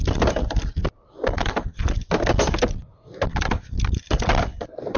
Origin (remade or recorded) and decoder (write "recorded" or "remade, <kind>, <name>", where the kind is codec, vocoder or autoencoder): recorded